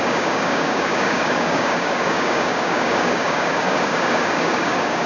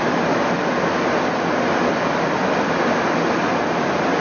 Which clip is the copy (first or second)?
first